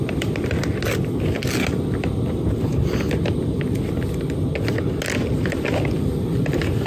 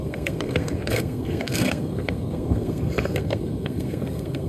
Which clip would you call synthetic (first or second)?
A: second